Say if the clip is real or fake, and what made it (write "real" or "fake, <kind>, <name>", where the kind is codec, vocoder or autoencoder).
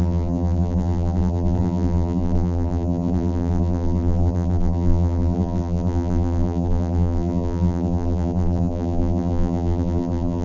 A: fake, vocoder, BigVGAN v2